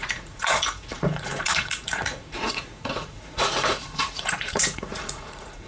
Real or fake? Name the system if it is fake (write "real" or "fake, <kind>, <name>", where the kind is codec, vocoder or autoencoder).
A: fake, vocoder, Vocos